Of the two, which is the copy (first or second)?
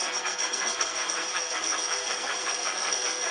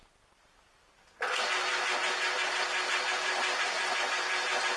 first